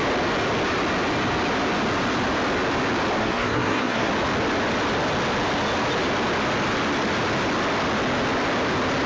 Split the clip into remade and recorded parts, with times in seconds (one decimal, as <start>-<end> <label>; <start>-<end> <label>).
0.0-3.2 recorded; 3.2-4.1 remade; 4.1-9.1 recorded